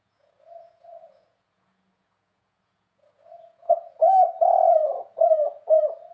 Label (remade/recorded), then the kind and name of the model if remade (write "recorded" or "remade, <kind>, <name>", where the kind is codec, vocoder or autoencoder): remade, vocoder, Vocos